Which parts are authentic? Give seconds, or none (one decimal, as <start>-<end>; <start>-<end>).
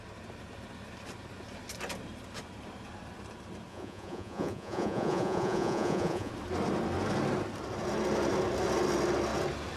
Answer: 0.0-3.7; 6.3-9.8